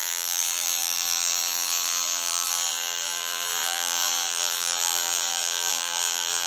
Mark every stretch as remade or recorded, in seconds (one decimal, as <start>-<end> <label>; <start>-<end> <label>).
0.0-6.5 remade